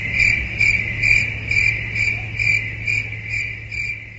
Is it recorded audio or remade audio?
recorded